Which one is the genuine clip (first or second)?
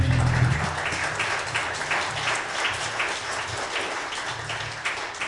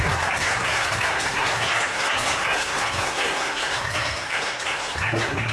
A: first